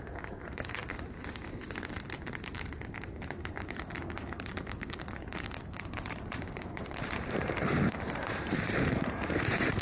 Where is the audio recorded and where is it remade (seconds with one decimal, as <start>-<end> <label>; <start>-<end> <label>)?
0.0-0.8 remade; 0.8-2.2 recorded; 2.2-9.8 remade

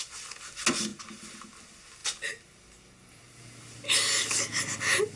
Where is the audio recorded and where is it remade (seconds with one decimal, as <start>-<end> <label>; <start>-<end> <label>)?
0.0-5.2 recorded

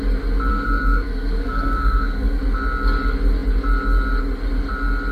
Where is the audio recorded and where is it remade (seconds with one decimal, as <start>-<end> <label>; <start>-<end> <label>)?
0.0-0.5 recorded; 0.5-2.4 remade; 2.4-5.1 recorded

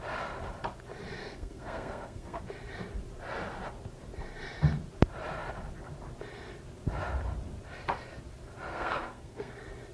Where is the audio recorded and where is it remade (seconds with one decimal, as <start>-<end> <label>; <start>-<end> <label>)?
0.0-1.2 recorded; 1.2-2.4 remade; 2.4-8.7 recorded; 8.7-9.5 remade; 9.5-9.9 recorded

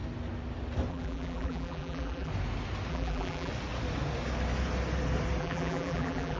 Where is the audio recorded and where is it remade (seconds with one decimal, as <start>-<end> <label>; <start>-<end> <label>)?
0.0-0.9 recorded; 0.9-2.3 remade; 2.3-2.9 recorded; 2.9-3.5 remade; 3.5-5.4 recorded; 5.4-6.4 remade

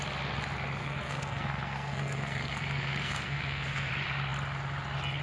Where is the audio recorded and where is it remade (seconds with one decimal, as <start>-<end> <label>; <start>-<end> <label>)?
0.0-0.8 recorded; 0.8-3.9 remade; 3.9-5.2 recorded

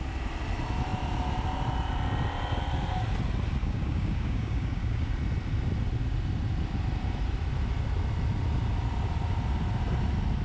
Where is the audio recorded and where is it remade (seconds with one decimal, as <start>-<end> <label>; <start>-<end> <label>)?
0.0-3.6 recorded; 3.6-5.1 remade; 5.1-10.4 recorded

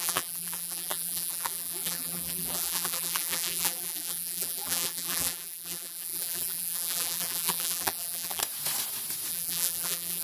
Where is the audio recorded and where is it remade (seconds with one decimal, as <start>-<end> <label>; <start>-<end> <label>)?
0.0-8.4 remade; 8.4-9.3 recorded; 9.3-10.2 remade